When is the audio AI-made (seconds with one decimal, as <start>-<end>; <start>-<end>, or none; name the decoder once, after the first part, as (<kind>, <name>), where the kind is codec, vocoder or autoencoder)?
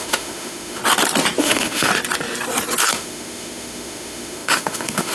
0.0-0.8 (autoencoder, DAC-VAE); 1.4-1.9; 2.9-5.1